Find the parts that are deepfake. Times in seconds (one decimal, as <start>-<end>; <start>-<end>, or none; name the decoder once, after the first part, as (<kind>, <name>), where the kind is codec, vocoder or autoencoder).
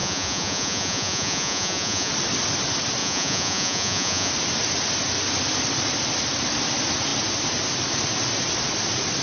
0.0-2.1 (vocoder, Vocos); 3.0-4.3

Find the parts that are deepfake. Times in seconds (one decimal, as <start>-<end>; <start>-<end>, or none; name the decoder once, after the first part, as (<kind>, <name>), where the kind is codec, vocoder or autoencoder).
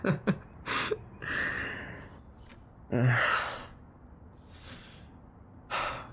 none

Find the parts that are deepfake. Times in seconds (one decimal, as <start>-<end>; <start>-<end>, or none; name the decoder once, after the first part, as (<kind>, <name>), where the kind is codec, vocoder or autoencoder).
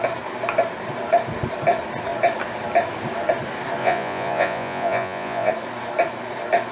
3.8-5.5 (vocoder, Vocos)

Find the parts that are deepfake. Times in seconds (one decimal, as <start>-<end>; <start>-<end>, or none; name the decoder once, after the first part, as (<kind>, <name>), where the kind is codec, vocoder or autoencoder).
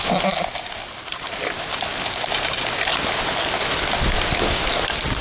none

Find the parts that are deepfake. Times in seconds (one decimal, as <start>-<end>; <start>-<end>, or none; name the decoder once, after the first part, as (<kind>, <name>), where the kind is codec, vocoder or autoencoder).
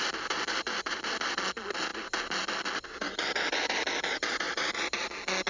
none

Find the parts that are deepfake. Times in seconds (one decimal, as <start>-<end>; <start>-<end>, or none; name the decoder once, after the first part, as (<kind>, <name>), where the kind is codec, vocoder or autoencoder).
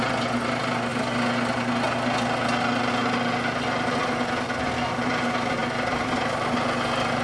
none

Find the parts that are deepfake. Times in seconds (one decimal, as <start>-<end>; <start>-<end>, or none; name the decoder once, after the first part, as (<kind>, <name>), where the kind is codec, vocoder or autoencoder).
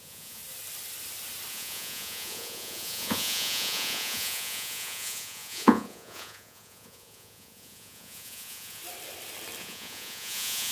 0.0-0.4 (vocoder, Vocos); 1.5-8.8; 9.6-10.7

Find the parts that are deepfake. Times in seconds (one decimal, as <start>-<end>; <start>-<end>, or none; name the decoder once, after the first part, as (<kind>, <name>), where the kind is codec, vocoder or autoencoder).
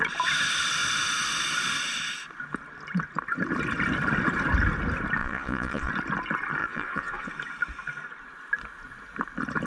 5.2-5.9 (vocoder, Vocos); 6.6-7.3